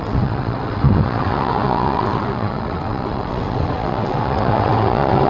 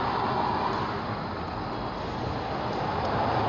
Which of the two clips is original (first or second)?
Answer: second